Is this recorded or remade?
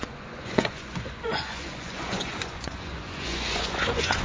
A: remade